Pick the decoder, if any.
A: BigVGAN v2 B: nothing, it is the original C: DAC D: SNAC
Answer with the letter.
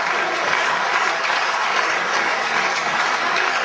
C